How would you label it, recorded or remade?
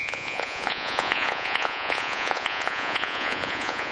remade